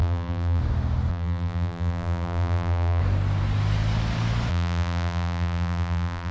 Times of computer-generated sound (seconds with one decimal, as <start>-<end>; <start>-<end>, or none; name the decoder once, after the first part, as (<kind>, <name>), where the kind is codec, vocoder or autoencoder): 0.0-0.6 (vocoder, BigVGAN v2); 1.1-3.0; 4.5-6.3

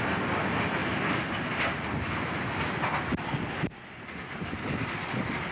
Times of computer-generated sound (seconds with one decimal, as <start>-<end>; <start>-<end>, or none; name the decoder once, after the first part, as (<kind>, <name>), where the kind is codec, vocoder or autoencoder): none

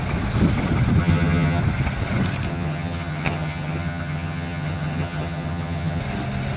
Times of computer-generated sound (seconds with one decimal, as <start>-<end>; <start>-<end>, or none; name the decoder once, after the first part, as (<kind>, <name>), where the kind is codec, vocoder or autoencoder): 1.0-1.6 (vocoder, HiFi-GAN); 2.5-6.0

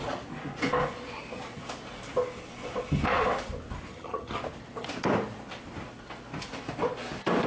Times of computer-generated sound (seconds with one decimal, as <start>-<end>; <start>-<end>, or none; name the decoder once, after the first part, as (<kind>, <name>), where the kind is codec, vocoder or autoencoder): 3.9-4.4 (vocoder, HiFi-GAN)

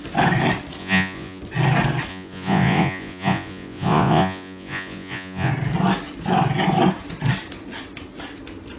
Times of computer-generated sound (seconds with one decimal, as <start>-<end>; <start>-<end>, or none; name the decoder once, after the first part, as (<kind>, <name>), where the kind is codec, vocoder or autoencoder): 0.8-1.4 (vocoder, Vocos); 2.1-5.5

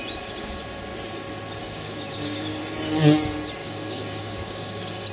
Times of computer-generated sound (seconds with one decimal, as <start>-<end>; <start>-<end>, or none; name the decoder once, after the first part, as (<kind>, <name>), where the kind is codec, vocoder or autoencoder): 1.6-2.6 (codec, DAC); 3.6-5.1

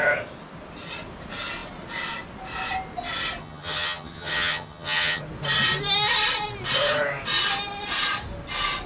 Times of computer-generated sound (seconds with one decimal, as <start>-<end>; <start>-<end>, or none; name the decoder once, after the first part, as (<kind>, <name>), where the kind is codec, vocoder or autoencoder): 3.4-5.2 (vocoder, HiFi-GAN)